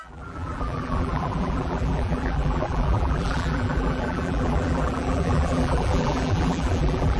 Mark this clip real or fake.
fake